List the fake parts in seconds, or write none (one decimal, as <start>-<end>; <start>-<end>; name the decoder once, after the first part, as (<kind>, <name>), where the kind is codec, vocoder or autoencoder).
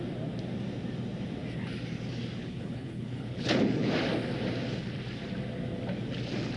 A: 2.4-3.9 (codec, HILCodec)